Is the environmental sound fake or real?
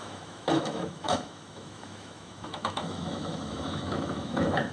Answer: fake